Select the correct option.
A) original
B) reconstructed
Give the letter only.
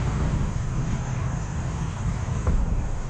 B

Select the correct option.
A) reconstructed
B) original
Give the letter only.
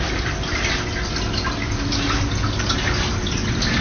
B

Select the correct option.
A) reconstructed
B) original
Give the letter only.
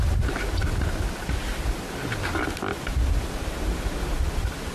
B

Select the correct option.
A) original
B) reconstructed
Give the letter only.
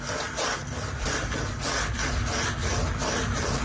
A